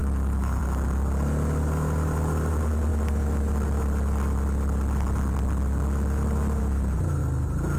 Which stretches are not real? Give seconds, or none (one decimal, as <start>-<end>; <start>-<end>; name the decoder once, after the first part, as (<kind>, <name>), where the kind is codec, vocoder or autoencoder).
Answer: 0.0-0.6 (autoencoder, DAC-VAE)